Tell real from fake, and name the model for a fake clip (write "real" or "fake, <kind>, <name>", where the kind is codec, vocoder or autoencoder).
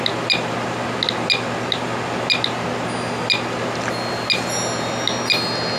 real